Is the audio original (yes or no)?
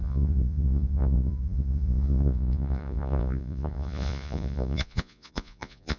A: no